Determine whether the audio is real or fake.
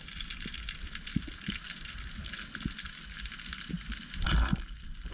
real